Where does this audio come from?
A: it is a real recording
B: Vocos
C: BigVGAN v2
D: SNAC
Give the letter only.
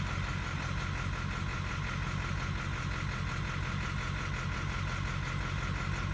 A